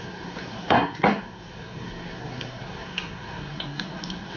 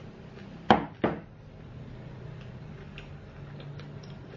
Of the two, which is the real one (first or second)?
second